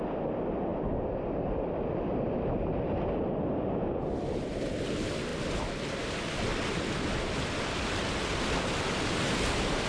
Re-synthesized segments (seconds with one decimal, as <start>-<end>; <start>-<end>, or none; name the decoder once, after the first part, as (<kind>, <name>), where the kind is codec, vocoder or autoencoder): 0.7-2.5 (vocoder, BigVGAN v2); 5.3-6.0; 6.5-7.2